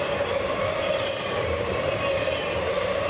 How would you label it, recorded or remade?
recorded